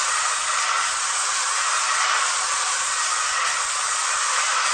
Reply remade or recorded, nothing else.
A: recorded